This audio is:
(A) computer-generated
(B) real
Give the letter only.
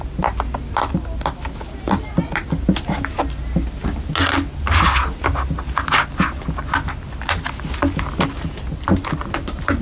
B